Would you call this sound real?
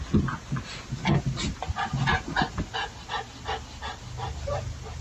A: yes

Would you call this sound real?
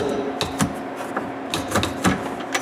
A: yes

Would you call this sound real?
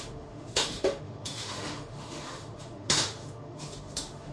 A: no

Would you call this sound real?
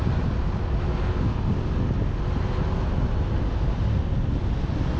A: yes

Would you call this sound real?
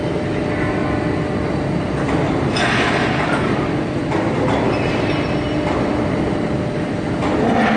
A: yes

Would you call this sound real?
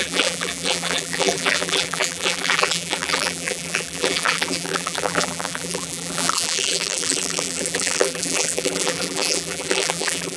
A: no